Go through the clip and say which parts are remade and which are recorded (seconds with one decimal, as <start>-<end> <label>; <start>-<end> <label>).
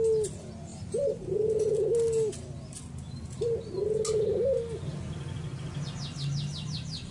0.0-0.7 recorded; 0.7-1.5 remade; 1.5-7.1 recorded